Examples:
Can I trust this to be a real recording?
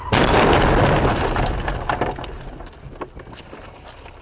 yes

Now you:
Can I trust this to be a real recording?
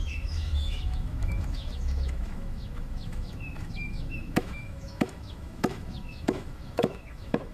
no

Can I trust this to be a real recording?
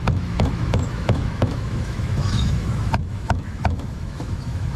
no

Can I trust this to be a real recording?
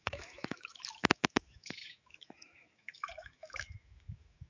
no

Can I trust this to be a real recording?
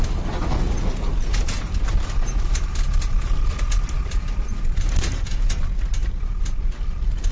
yes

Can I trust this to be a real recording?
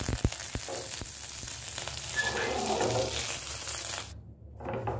yes